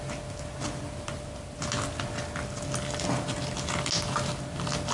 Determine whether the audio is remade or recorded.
recorded